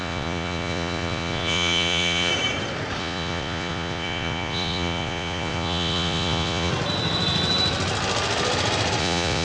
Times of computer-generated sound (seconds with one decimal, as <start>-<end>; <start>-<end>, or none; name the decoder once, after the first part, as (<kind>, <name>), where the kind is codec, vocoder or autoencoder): 0.0-2.3 (vocoder, Vocos); 3.0-6.7; 9.0-9.4